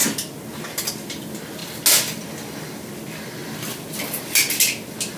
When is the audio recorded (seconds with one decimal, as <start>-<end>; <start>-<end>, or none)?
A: 0.0-5.2